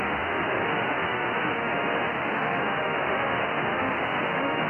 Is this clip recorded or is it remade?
remade